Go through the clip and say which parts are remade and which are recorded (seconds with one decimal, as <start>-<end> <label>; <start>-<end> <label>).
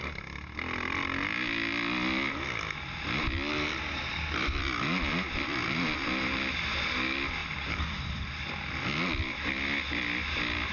0.0-10.7 recorded